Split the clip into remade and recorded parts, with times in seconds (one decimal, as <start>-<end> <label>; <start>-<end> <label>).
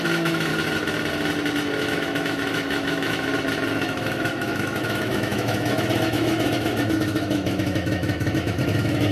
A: 0.0-0.5 remade; 0.5-1.8 recorded; 1.8-3.3 remade; 3.3-3.8 recorded; 3.8-9.1 remade